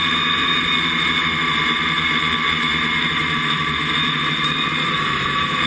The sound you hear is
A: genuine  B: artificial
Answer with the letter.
B